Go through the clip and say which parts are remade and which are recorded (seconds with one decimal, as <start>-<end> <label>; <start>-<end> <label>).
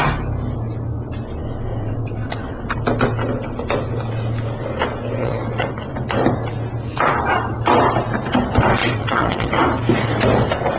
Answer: 0.0-1.7 recorded; 1.7-2.6 remade; 2.6-5.2 recorded; 5.2-5.7 remade; 5.7-8.8 recorded; 8.8-9.5 remade; 9.5-10.8 recorded